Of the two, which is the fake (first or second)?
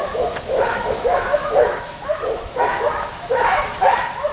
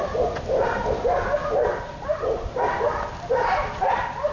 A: first